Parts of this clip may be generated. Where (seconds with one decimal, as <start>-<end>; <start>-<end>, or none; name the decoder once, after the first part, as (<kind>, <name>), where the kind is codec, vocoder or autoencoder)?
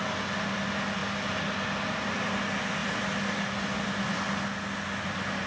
none